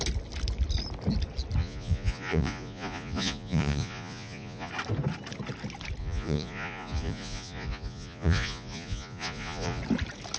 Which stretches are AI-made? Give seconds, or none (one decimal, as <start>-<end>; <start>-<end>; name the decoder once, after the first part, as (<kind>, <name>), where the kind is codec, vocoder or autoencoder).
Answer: 1.6-4.7 (vocoder, Vocos); 6.0-9.8